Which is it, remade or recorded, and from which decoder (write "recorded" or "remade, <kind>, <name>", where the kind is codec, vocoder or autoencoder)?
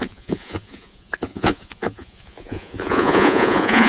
remade, vocoder, Vocos